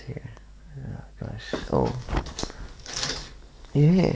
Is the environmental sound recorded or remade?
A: remade